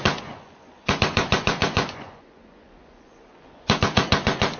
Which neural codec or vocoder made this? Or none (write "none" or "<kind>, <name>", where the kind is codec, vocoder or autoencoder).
vocoder, Vocos